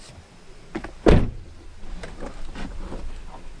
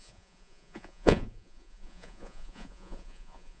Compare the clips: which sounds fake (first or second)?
second